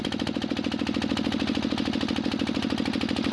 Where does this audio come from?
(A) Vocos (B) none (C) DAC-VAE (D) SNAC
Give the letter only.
B